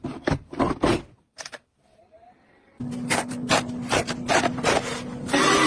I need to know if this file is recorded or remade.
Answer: recorded